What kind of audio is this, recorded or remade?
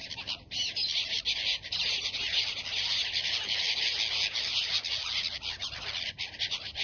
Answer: recorded